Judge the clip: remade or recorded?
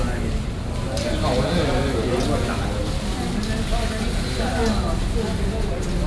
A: recorded